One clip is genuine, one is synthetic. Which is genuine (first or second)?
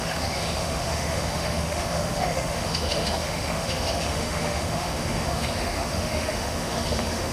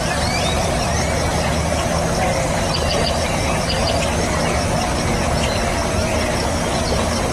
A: second